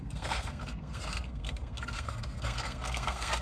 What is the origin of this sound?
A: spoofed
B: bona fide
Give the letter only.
A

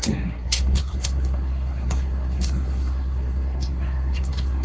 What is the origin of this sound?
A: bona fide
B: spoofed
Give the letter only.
B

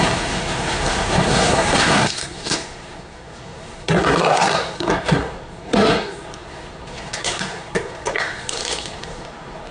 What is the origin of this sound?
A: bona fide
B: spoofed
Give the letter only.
B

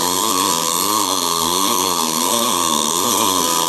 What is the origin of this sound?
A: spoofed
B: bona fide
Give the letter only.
A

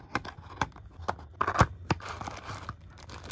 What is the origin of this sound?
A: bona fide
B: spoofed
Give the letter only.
A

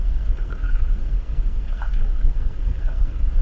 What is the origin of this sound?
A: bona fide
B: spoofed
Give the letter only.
B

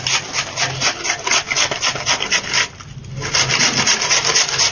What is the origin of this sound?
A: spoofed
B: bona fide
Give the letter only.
B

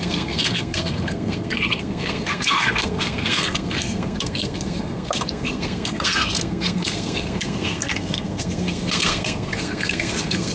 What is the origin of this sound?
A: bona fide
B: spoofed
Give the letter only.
B